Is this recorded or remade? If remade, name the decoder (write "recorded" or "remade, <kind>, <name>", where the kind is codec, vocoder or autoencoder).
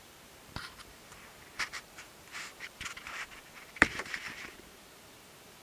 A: remade, vocoder, BigVGAN v2